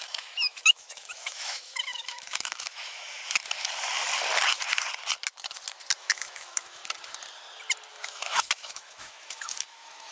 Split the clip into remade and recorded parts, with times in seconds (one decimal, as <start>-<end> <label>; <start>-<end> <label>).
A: 0.0-3.2 remade; 3.2-6.0 recorded; 6.0-6.8 remade; 6.8-7.9 recorded; 7.9-10.1 remade